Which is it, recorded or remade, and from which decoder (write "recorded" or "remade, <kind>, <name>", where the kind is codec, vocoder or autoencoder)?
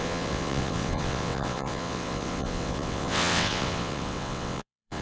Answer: remade, vocoder, WaveNeXt